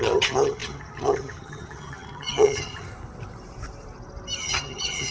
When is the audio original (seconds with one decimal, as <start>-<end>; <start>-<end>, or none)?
2.9-4.4